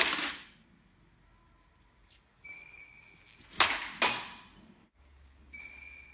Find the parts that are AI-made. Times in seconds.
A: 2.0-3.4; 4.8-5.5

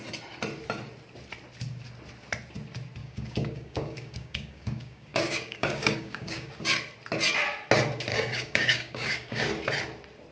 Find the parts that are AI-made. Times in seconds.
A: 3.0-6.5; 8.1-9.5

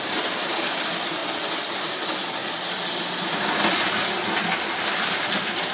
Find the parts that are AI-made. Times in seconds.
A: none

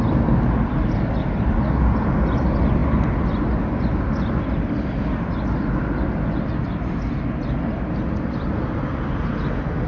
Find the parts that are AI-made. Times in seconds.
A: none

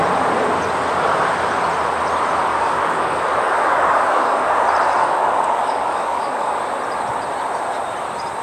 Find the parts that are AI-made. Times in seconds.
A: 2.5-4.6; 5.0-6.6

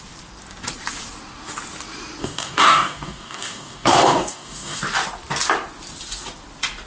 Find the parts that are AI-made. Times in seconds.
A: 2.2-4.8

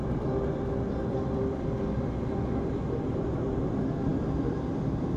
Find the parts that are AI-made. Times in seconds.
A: none